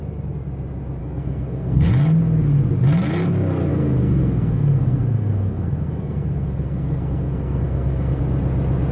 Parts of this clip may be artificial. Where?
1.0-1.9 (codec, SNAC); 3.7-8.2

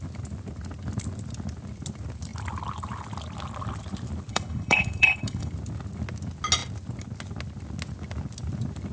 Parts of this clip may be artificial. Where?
4.3-5.5 (codec, HILCodec)

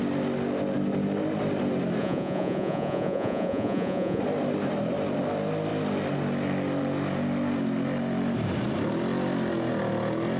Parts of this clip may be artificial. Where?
2.0-4.2 (vocoder, Vocos)

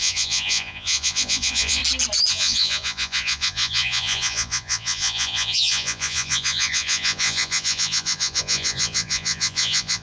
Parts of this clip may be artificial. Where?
0.0-1.8 (vocoder, Vocos); 2.3-10.0

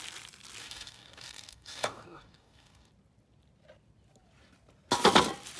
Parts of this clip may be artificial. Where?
0.6-2.9 (codec, DAC)

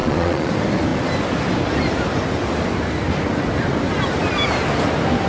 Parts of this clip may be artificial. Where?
0.0-0.5 (vocoder, Vocos)